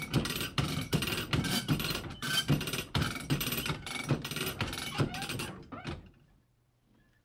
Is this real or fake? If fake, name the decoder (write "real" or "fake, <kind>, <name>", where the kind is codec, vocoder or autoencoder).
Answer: fake, vocoder, BigVGAN v2